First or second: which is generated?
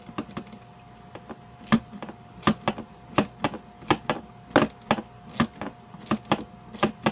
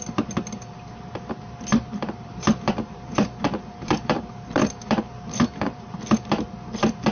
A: second